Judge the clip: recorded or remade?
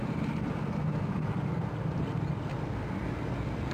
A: recorded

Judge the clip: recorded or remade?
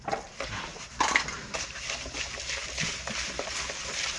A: recorded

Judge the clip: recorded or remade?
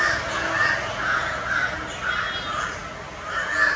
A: recorded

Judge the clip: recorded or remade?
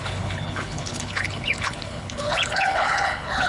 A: remade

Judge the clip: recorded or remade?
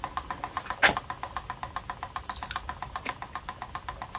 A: recorded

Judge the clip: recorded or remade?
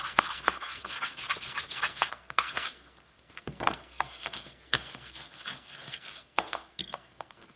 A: remade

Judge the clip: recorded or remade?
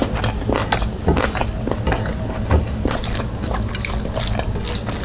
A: recorded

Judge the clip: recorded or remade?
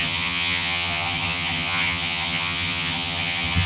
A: remade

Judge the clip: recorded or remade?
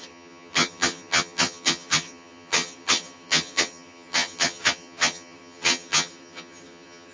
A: remade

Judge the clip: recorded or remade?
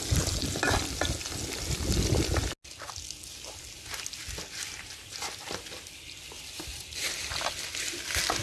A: recorded